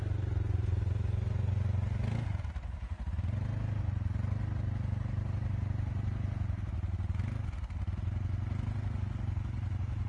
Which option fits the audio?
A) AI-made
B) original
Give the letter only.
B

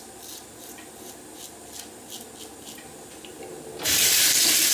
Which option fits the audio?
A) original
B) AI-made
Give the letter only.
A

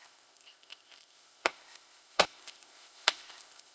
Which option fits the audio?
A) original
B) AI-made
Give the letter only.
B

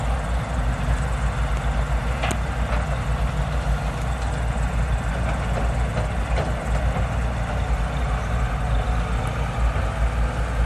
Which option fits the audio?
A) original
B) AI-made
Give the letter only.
A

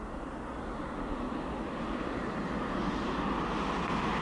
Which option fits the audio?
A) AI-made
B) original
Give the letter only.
B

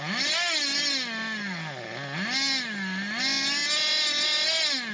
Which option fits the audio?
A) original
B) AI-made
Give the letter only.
A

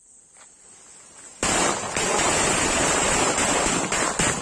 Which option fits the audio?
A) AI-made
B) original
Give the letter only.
B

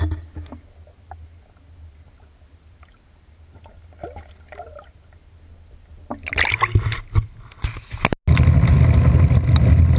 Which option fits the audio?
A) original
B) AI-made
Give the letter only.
A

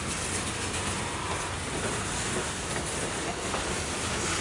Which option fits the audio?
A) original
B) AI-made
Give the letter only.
A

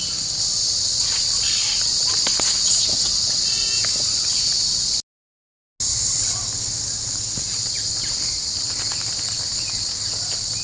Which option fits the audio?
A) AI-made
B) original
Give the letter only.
B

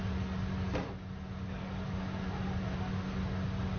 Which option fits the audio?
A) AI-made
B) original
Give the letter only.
B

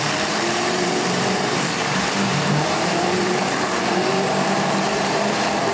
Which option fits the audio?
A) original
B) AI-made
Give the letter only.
B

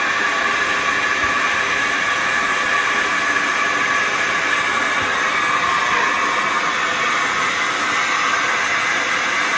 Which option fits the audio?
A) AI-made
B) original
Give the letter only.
B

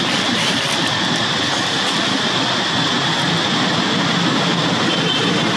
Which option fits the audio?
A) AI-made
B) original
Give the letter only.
B